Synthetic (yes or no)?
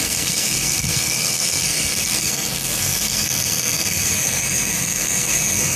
yes